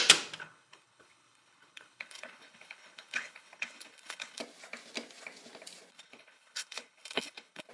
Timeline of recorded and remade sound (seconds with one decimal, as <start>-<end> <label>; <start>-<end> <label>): 0.0-0.4 recorded; 0.4-4.4 remade; 4.4-5.9 recorded; 5.9-7.7 remade